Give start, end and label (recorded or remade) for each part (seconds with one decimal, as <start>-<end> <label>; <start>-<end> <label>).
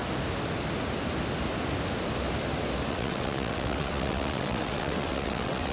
0.0-2.9 recorded; 2.9-5.7 remade